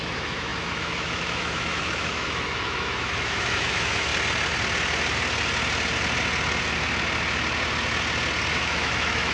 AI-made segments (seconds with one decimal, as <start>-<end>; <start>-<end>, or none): 0.0-4.1; 8.5-9.3